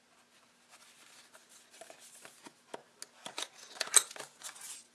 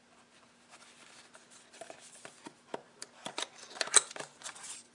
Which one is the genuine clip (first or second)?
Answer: first